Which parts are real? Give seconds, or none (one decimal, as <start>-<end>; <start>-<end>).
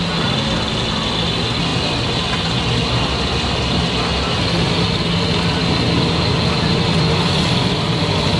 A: 0.0-8.4